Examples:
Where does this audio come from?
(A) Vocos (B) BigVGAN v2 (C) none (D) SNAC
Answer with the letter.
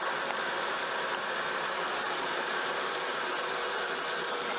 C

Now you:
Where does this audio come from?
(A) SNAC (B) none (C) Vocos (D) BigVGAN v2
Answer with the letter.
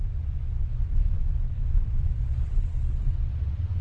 C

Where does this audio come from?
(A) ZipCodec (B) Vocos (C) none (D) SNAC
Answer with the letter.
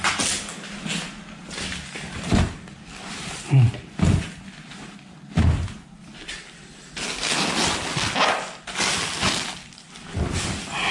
C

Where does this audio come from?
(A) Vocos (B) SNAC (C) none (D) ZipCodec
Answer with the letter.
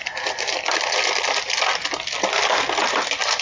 C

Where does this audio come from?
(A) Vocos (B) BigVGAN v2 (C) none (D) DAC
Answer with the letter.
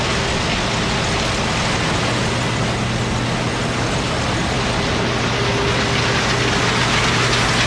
C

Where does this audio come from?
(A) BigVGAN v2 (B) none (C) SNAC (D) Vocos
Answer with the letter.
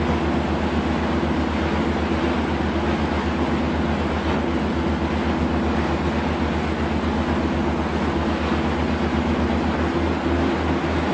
B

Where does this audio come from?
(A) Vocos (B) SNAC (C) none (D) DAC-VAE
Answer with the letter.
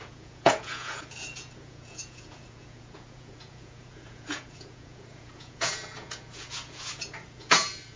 A